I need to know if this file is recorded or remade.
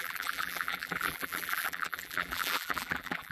remade